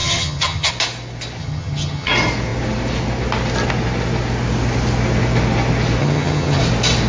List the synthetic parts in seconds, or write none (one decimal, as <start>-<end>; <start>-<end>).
0.0-0.7; 1.4-2.1; 6.0-6.6